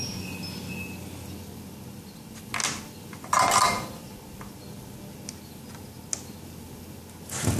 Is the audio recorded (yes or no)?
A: yes